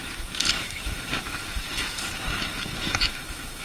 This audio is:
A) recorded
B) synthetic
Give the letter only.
B